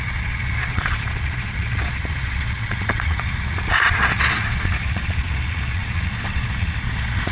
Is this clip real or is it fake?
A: fake